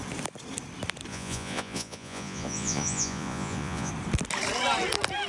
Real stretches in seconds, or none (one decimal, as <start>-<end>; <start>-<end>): 0.0-1.1; 3.9-5.3